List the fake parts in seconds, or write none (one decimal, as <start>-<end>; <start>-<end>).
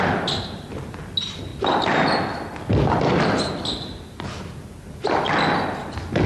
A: none